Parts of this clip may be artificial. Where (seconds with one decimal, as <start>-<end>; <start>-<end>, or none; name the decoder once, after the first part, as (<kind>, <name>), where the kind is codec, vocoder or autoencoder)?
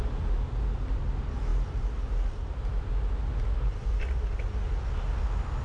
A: none